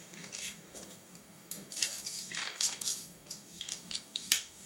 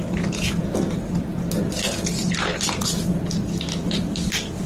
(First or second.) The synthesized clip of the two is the first